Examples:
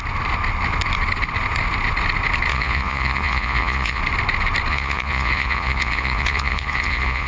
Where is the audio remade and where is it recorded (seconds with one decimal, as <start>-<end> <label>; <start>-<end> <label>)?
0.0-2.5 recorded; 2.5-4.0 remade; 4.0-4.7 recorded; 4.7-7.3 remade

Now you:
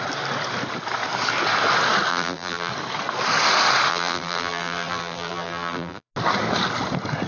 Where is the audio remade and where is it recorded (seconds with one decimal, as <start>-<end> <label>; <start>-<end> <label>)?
0.0-2.1 recorded; 2.1-2.7 remade; 2.7-3.9 recorded; 3.9-6.1 remade; 6.1-7.3 recorded

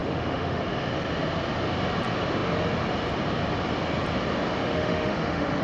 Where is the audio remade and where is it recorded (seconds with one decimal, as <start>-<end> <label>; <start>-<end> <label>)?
0.0-0.6 remade; 0.6-4.6 recorded; 4.6-5.6 remade